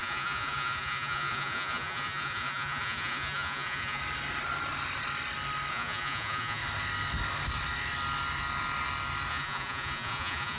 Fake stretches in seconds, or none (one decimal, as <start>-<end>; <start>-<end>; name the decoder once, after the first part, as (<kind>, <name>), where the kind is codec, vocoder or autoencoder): 0.0-4.0 (vocoder, Vocos); 5.7-6.6; 9.3-10.6